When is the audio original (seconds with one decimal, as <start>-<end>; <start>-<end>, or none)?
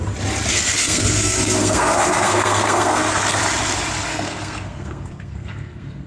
0.0-0.5; 3.4-4.1